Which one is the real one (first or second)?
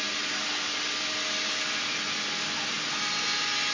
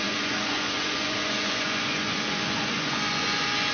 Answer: first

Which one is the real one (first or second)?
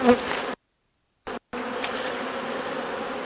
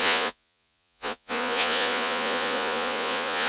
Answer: first